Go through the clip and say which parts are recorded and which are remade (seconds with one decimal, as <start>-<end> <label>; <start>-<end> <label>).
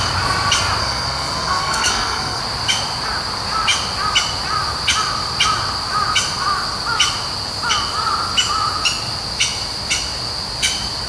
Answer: 0.0-0.8 recorded; 0.8-2.4 remade; 2.4-11.1 recorded